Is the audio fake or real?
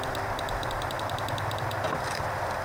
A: real